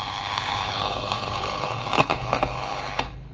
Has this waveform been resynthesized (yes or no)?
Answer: yes